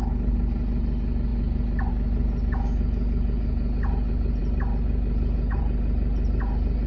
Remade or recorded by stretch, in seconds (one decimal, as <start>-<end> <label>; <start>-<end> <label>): 0.0-6.9 recorded